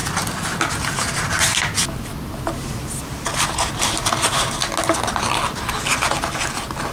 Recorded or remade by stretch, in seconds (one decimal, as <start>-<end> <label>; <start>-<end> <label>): 0.0-6.9 recorded